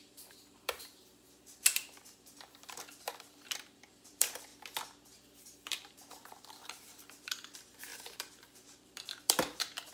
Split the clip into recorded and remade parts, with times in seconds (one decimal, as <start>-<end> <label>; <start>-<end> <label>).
0.0-4.5 remade; 4.5-5.4 recorded; 5.4-9.9 remade